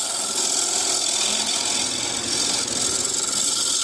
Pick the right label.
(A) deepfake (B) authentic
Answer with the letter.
B